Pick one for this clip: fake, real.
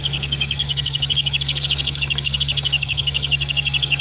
fake